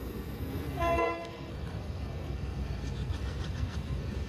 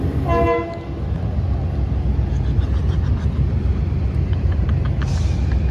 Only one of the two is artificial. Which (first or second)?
first